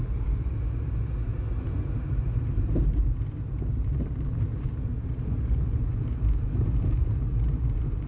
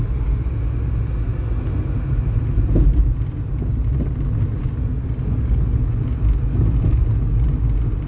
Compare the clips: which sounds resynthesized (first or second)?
first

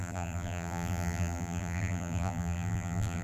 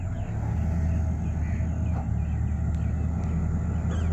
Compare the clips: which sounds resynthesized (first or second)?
first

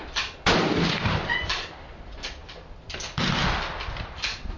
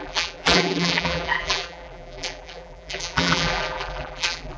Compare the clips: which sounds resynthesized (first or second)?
second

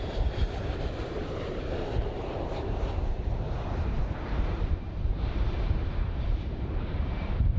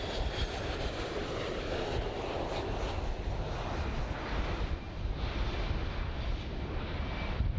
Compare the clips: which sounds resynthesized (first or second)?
first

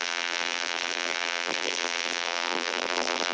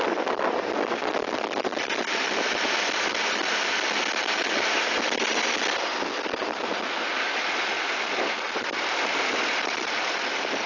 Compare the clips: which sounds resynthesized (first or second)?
first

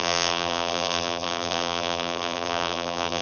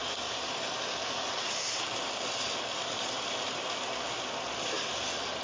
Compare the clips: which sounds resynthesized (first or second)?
first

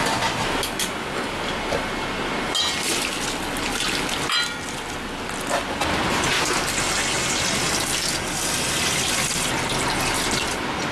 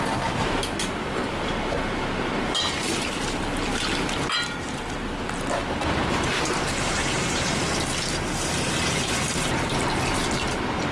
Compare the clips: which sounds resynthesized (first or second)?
second